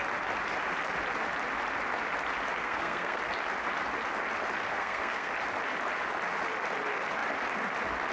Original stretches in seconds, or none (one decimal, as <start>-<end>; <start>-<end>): 0.0-2.6; 3.2-4.7; 5.3-8.1